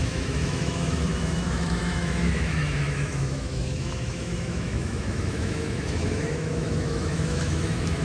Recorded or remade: remade